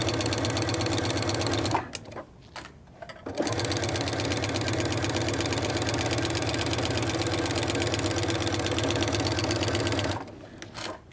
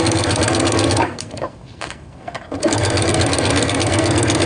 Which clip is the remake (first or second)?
second